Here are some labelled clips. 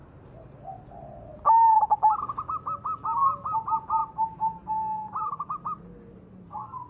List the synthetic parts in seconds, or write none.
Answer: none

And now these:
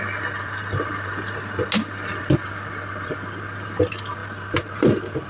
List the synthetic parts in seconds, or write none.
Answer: none

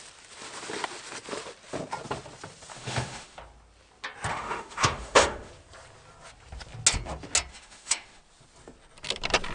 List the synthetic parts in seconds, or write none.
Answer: 2.7-3.4; 4.3-5.5; 7.5-8.2

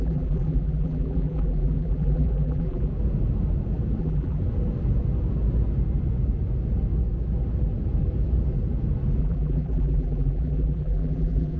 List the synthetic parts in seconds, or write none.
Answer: 0.0-2.9; 4.0-4.4; 9.2-11.6

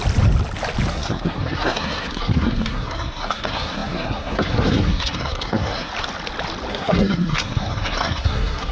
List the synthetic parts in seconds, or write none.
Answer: 0.9-5.9; 6.7-8.7

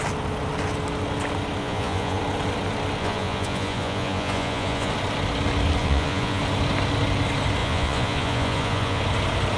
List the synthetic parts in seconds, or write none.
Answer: 1.6-2.2; 3.0-4.9; 5.8-6.4; 7.6-9.0